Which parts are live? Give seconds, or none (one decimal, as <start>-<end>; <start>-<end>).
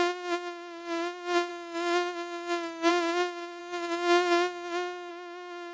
0.0-1.5; 2.9-3.6; 5.1-5.7